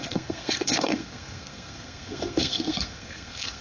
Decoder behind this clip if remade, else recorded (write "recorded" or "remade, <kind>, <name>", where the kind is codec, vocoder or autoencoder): remade, codec, SNAC